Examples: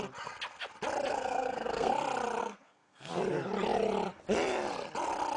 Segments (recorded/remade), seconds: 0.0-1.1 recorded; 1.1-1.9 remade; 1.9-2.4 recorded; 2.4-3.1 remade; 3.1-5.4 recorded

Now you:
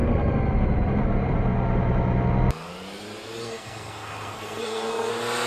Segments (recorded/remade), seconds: 0.0-3.4 recorded; 3.4-5.1 remade; 5.1-5.5 recorded

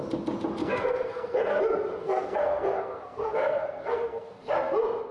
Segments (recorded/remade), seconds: 0.0-0.6 recorded; 0.6-1.6 remade; 1.6-2.0 recorded; 2.0-4.5 remade; 4.5-5.1 recorded

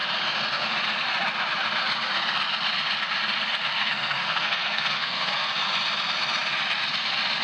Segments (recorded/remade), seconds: 0.0-3.7 recorded; 3.7-5.5 remade; 5.5-7.4 recorded